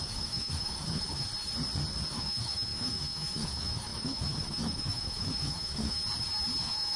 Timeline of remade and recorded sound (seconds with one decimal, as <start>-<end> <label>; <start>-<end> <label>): 0.0-1.3 remade; 1.3-2.1 recorded; 2.1-6.0 remade; 6.0-6.6 recorded; 6.6-7.0 remade